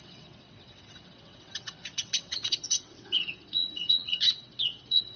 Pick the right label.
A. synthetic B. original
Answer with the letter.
A